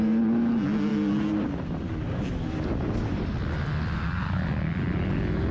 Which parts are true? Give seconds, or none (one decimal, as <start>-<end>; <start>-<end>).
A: 0.0-5.5